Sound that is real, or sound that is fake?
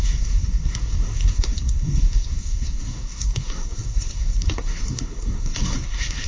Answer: fake